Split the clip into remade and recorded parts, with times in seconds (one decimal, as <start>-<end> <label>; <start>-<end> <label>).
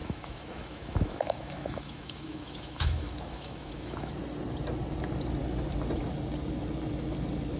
0.0-4.1 remade; 4.1-7.6 recorded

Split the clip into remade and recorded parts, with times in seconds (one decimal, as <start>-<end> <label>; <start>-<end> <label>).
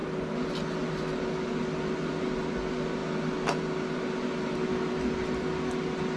0.0-6.2 recorded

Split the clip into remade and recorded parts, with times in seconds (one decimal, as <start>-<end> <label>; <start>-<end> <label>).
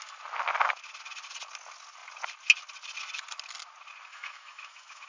0.0-4.1 recorded; 4.1-5.1 remade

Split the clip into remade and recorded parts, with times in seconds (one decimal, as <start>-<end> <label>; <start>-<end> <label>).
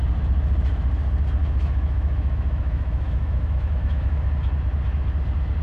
0.0-1.4 recorded; 1.4-4.3 remade; 4.3-5.6 recorded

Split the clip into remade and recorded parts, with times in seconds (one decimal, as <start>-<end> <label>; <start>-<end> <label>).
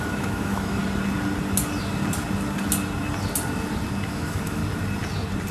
0.0-0.8 remade; 0.8-4.1 recorded; 4.1-4.6 remade; 4.6-5.5 recorded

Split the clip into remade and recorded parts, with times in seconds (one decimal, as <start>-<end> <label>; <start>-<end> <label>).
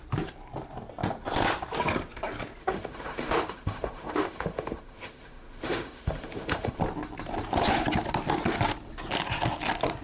0.0-2.6 recorded; 2.6-6.8 remade; 6.8-10.0 recorded